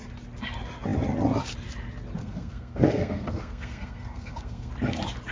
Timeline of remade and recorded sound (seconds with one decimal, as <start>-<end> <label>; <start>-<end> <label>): 0.0-2.2 recorded; 2.2-4.7 remade; 4.7-5.3 recorded